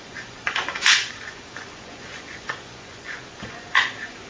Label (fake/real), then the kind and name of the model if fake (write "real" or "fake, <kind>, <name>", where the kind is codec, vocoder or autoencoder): fake, vocoder, Vocos